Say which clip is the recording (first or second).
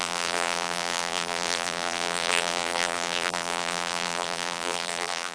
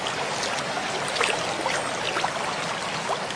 second